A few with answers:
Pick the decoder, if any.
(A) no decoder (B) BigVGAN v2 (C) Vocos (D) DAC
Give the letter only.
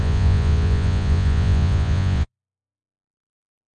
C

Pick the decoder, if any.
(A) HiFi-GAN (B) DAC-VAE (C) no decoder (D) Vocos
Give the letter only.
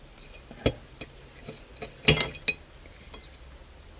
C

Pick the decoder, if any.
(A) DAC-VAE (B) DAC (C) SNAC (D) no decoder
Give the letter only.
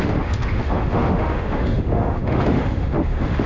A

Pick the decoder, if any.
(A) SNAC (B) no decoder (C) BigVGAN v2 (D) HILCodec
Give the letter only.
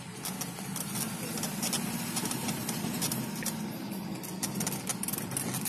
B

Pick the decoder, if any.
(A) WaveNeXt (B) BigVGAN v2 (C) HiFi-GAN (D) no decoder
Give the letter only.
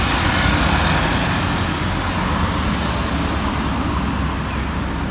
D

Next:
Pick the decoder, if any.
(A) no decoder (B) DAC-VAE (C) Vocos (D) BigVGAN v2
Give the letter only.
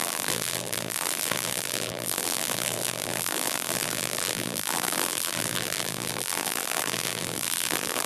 D